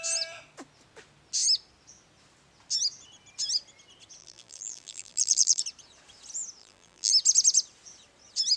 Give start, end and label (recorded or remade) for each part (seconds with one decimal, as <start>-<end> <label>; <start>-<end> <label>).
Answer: 0.0-4.2 recorded; 4.2-5.6 remade; 5.6-6.6 recorded; 6.6-7.1 remade; 7.1-8.6 recorded